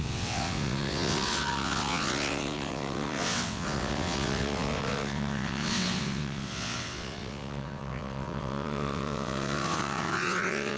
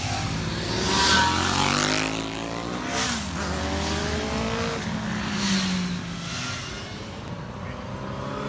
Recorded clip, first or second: second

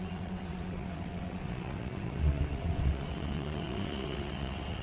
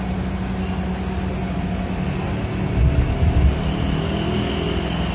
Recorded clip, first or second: second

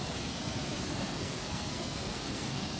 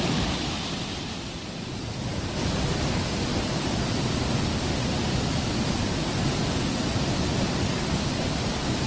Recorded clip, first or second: second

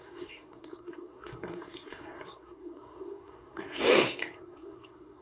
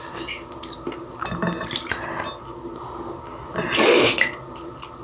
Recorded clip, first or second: second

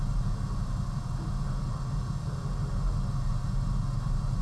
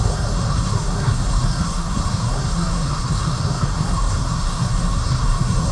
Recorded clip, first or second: first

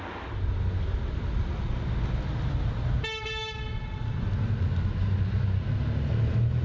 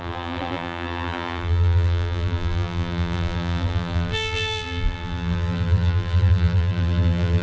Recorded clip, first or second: first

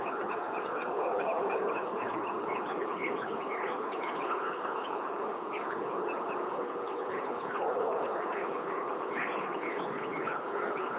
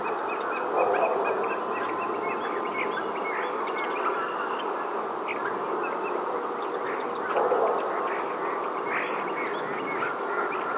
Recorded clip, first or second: second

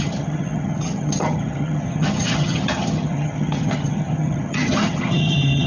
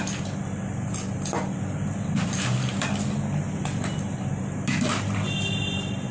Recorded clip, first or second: second